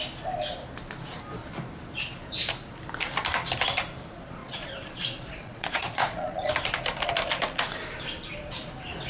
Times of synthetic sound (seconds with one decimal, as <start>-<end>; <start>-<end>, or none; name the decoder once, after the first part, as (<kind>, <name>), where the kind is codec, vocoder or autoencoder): 4.4-6.5 (vocoder, Vocos)

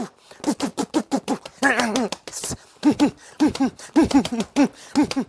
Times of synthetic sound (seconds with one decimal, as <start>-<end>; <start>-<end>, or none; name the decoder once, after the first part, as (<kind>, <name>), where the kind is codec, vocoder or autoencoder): 0.7-3.9 (vocoder, BigVGAN v2)